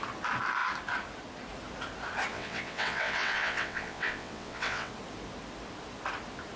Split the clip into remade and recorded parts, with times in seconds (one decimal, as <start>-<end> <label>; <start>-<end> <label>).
0.0-2.3 recorded; 2.3-4.9 remade; 4.9-6.6 recorded